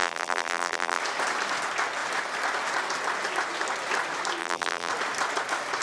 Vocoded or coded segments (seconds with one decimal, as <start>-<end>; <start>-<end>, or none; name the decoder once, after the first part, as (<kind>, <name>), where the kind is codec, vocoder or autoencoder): 0.0-1.0 (vocoder, BigVGAN v2); 4.4-4.9